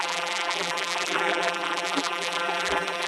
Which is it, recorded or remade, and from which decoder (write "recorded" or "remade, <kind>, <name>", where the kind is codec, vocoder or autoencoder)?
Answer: remade, vocoder, BigVGAN v2